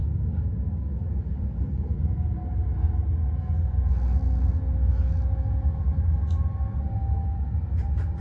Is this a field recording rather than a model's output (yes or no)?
yes